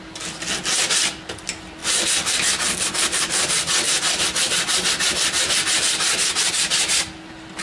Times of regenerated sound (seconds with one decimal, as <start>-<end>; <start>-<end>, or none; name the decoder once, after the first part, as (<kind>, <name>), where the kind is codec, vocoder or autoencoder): none